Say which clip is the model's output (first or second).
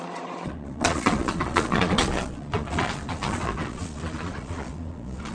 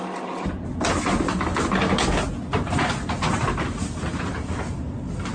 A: first